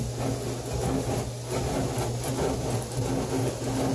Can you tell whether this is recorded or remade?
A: recorded